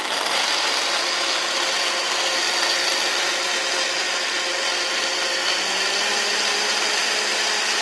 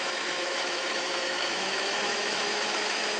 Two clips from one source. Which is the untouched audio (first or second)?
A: first